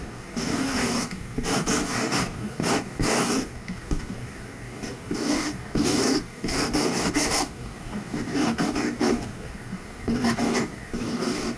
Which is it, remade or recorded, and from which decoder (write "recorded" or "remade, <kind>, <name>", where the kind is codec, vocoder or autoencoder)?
remade, codec, DAC